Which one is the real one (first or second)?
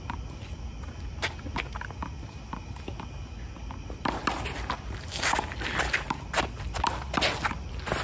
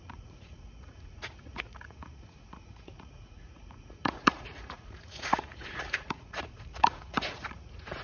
first